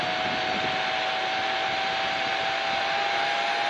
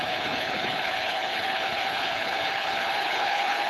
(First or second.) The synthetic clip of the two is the second